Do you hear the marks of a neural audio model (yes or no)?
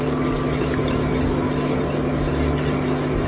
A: no